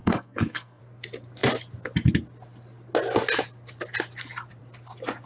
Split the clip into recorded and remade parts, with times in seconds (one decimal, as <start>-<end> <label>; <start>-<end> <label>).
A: 0.0-0.8 remade; 0.8-5.3 recorded